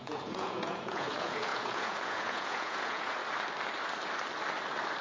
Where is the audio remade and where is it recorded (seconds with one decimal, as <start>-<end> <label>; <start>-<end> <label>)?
0.0-3.2 remade; 3.2-5.0 recorded